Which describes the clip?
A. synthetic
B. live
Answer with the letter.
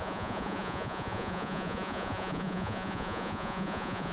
A